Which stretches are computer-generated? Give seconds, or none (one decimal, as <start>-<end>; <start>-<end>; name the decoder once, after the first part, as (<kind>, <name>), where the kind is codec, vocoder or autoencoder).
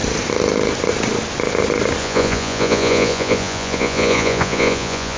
2.0-5.2 (vocoder, Vocos)